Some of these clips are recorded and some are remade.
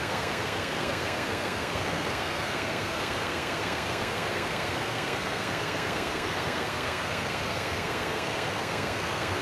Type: remade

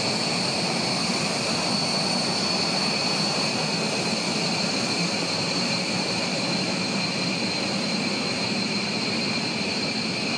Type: recorded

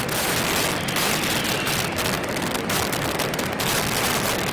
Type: recorded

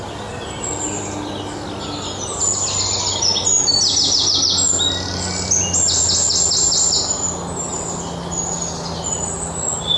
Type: recorded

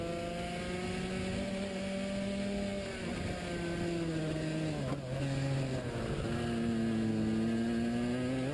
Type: recorded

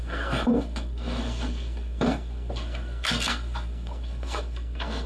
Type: remade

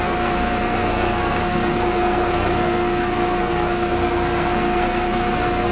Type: remade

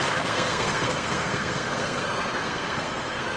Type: remade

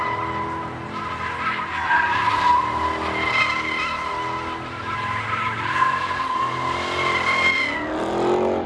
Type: recorded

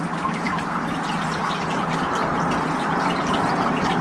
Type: recorded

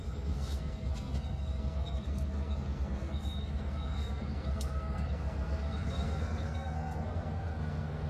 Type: remade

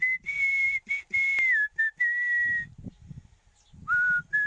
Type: recorded